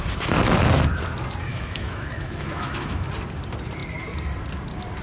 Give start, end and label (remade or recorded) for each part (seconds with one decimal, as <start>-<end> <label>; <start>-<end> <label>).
0.0-1.5 recorded; 1.5-3.1 remade; 3.1-5.0 recorded